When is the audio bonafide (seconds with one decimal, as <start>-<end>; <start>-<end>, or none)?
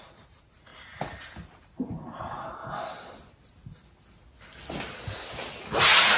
0.7-2.2; 2.6-5.8